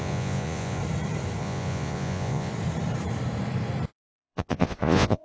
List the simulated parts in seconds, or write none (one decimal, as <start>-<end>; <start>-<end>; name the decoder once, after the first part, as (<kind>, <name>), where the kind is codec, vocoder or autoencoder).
0.0-0.8 (vocoder, Vocos); 1.4-2.5; 3.9-5.2